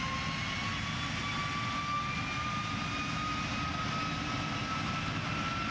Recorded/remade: recorded